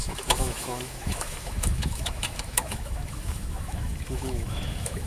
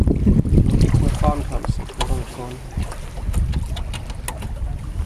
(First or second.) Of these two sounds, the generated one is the first